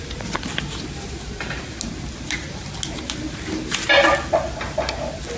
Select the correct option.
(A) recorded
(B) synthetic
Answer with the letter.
A